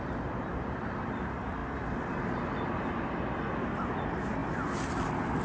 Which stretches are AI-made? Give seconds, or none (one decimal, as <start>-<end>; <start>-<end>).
none